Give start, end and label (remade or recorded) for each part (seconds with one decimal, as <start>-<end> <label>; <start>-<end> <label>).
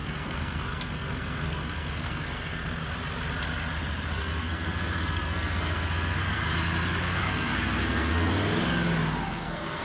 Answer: 0.0-2.8 remade; 2.8-4.1 recorded; 4.1-6.4 remade; 6.4-7.0 recorded; 7.0-8.3 remade; 8.3-9.3 recorded; 9.3-9.8 remade